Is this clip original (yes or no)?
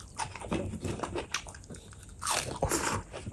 yes